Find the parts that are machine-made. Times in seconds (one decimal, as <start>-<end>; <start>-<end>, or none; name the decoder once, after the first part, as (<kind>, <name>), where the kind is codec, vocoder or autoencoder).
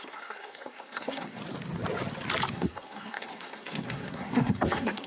0.0-1.4 (codec, SNAC); 2.5-5.1